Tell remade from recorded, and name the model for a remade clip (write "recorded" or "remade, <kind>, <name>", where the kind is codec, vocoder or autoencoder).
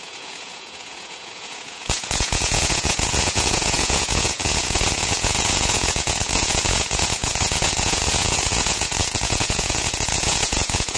remade, vocoder, Vocos